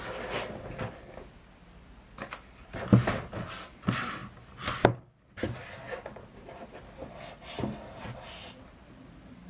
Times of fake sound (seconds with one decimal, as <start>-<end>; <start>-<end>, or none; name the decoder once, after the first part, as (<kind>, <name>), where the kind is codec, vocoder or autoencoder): none